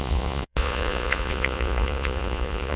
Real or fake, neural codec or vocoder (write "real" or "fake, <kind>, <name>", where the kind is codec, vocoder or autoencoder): fake, vocoder, Vocos